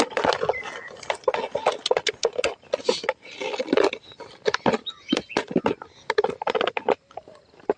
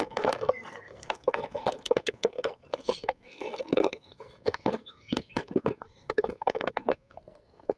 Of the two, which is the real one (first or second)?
first